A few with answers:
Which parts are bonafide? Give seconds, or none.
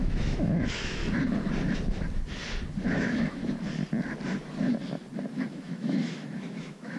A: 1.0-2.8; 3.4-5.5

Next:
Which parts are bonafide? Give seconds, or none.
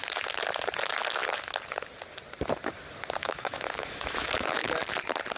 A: 0.0-3.2; 4.7-5.4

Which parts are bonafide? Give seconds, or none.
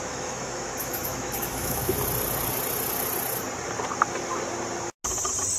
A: 1.8-5.6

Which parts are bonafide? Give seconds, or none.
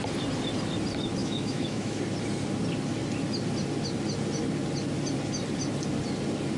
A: 0.0-1.2; 2.0-6.6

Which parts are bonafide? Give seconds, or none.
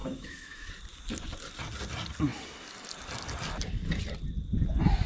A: 0.7-5.1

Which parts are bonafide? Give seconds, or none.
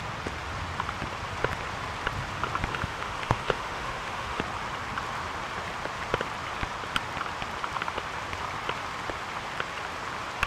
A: 0.0-2.7; 4.4-10.5